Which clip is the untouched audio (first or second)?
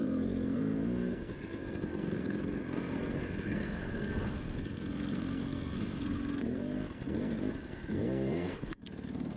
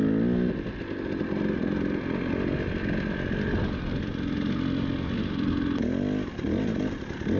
second